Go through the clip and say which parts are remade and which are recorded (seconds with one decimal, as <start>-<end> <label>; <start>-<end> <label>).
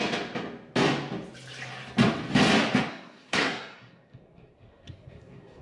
0.0-2.9 recorded; 2.9-5.6 remade